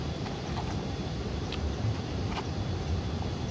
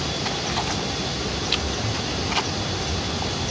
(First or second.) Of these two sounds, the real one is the second